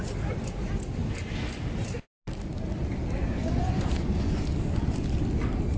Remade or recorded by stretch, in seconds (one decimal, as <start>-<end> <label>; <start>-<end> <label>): 0.0-3.2 recorded; 3.2-4.4 remade; 4.4-5.8 recorded